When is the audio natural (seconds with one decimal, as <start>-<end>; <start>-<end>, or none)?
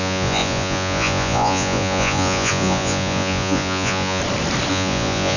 4.2-4.7